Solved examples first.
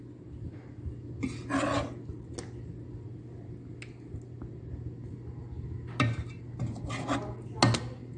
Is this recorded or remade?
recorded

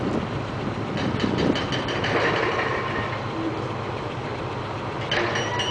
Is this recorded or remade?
recorded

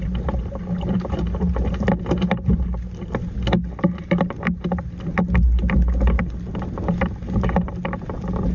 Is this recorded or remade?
recorded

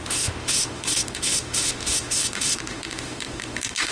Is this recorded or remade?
remade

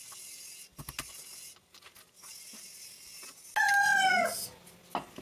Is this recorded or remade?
recorded